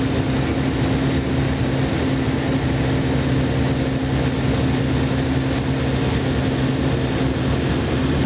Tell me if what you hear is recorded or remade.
recorded